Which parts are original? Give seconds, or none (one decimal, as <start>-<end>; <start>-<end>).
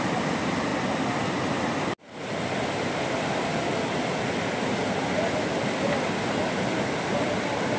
0.0-7.8